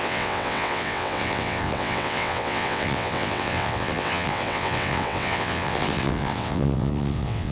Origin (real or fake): fake